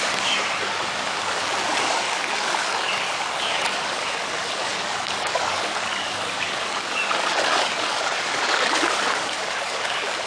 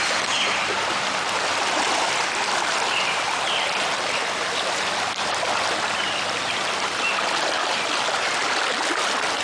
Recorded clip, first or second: second